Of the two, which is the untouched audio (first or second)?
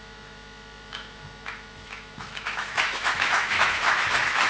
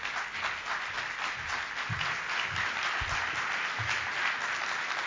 second